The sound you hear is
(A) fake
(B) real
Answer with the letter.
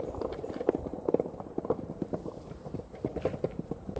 A